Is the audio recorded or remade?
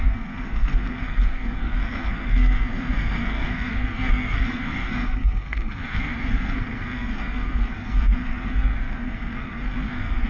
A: remade